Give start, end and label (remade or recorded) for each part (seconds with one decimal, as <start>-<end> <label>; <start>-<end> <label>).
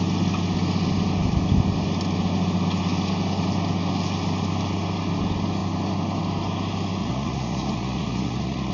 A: 0.0-7.0 recorded; 7.0-8.7 remade